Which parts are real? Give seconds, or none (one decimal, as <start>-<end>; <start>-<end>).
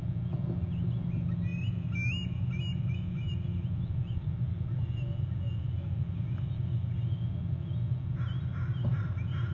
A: 0.0-9.5